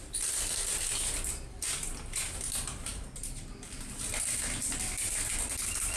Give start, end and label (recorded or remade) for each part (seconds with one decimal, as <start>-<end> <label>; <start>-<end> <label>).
0.0-6.0 recorded